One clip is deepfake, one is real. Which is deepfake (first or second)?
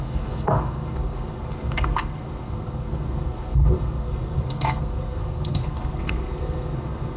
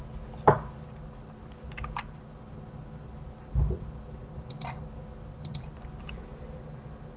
first